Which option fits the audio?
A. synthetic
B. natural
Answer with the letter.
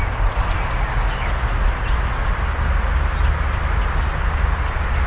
B